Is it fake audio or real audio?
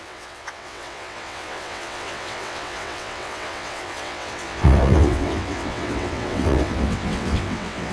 fake